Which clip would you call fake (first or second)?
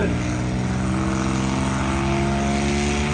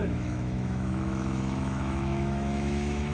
second